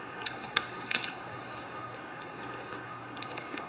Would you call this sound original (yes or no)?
no